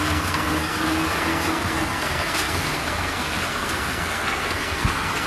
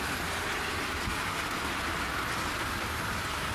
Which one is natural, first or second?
second